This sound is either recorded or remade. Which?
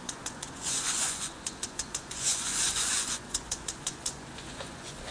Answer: remade